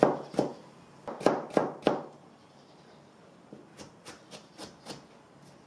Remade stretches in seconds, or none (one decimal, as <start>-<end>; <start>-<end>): 1.6-4.3